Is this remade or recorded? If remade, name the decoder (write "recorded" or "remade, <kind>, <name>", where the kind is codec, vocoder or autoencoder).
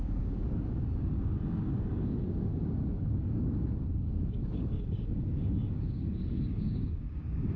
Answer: remade, codec, DAC